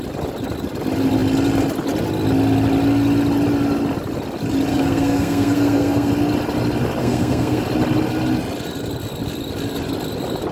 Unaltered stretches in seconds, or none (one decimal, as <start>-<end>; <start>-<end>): 0.0-4.7; 6.1-7.0; 7.6-10.5